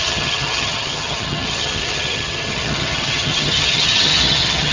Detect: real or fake fake